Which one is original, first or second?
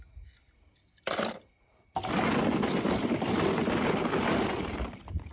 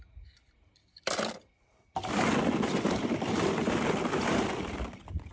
first